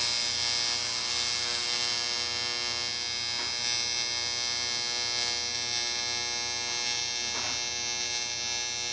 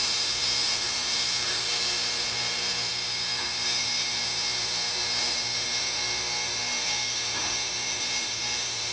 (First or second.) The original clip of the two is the first